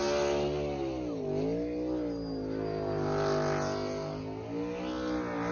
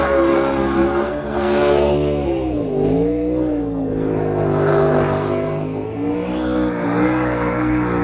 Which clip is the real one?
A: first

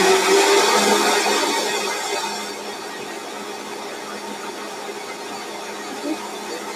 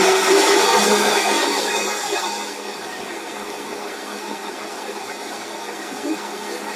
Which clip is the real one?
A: first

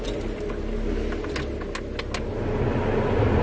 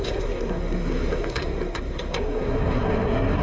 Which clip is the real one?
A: first